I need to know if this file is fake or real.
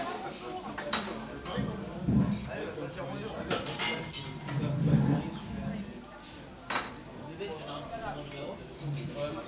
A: real